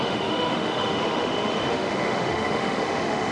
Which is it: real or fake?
fake